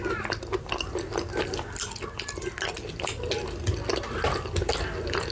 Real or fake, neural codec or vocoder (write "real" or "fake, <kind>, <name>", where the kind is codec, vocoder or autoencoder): real